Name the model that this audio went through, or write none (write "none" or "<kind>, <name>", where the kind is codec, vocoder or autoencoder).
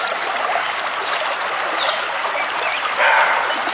none